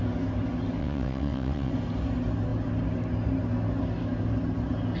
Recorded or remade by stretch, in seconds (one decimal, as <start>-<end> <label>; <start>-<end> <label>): 0.0-0.8 recorded; 0.8-1.7 remade; 1.7-5.0 recorded